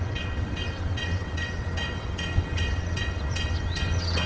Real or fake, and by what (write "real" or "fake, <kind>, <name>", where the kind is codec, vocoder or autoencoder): fake, vocoder, WaveNeXt